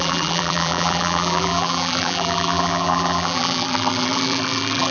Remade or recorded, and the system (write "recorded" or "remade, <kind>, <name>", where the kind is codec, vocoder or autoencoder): remade, vocoder, BigVGAN v2